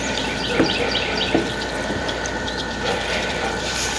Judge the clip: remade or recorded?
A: remade